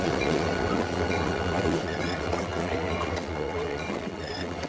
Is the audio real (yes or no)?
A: no